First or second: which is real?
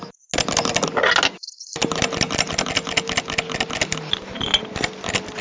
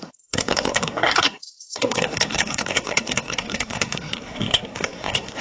first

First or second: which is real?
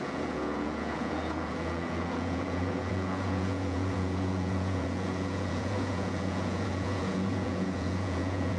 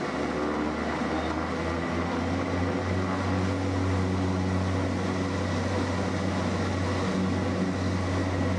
second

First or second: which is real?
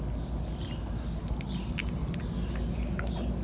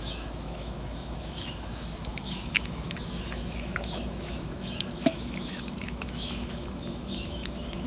first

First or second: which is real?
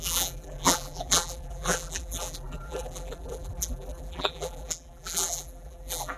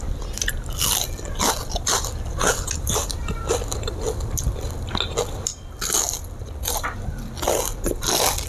second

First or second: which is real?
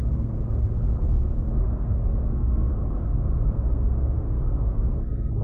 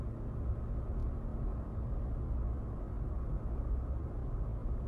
second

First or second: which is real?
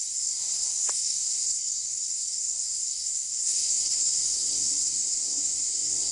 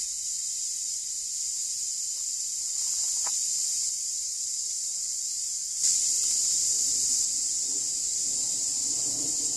second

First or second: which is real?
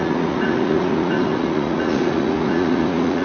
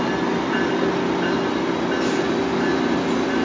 second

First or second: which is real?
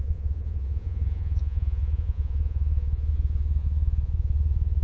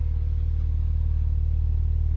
second